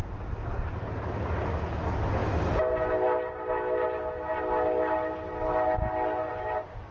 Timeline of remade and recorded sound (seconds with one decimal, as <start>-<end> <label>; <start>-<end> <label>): 0.0-6.9 recorded

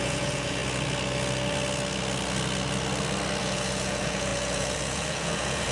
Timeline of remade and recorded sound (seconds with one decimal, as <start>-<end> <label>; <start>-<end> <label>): 0.0-0.6 remade; 0.6-3.4 recorded; 3.4-5.7 remade